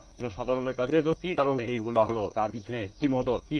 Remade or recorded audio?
remade